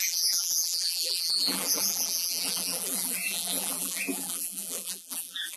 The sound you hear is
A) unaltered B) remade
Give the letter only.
B